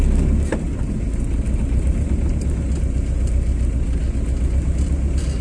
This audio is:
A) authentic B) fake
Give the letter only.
A